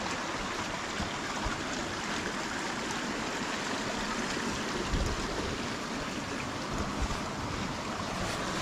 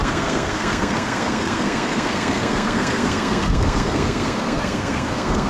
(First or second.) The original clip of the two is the first